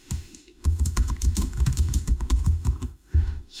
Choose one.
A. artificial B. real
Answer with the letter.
A